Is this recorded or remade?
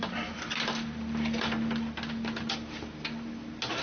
recorded